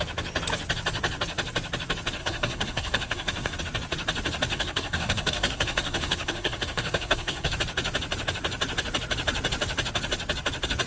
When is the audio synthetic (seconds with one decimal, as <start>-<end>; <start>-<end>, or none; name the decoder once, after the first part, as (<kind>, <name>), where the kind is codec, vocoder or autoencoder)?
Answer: 2.2-3.6 (codec, SNAC); 4.5-7.5